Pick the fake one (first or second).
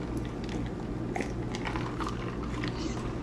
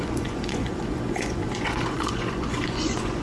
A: second